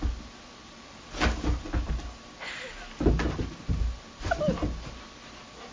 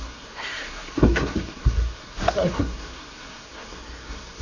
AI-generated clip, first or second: second